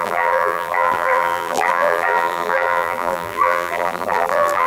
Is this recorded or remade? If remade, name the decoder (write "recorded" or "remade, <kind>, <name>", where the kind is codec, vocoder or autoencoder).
remade, vocoder, BigVGAN v2